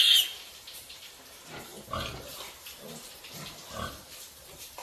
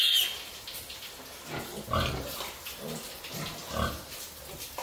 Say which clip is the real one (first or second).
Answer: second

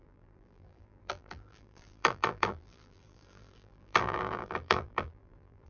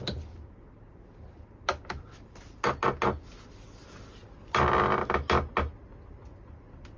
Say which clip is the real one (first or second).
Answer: second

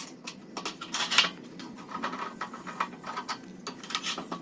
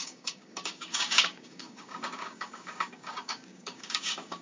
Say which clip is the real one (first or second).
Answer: first